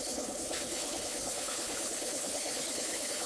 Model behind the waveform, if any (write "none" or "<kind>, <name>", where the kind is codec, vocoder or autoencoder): codec, HILCodec